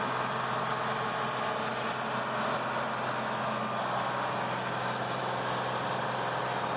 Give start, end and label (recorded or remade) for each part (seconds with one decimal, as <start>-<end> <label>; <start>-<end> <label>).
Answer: 0.0-6.8 recorded